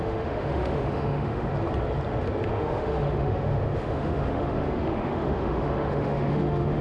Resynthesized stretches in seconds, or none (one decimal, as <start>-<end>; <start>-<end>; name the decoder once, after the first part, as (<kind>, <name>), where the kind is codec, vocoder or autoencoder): 0.0-1.5 (autoencoder, DAC-VAE); 2.5-6.8